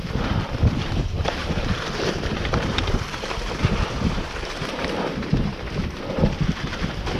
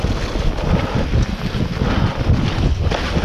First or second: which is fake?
first